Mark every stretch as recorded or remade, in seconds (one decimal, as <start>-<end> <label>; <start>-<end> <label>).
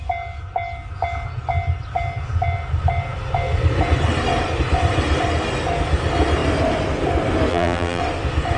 0.0-7.5 recorded; 7.5-8.0 remade; 8.0-8.6 recorded